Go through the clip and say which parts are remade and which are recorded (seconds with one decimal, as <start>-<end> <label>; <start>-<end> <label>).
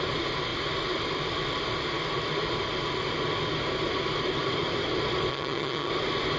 0.0-5.3 recorded; 5.3-5.9 remade; 5.9-6.4 recorded